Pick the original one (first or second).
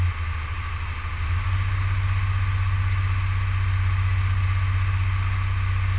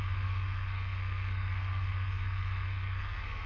first